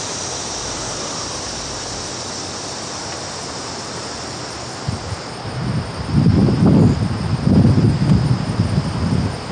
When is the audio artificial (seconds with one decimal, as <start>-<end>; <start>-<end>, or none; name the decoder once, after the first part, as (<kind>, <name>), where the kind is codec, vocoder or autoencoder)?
none